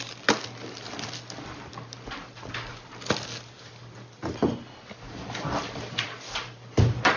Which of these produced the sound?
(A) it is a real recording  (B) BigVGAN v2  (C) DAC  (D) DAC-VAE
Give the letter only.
A